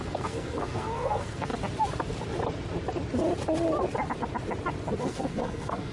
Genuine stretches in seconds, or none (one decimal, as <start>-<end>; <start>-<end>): 1.5-5.0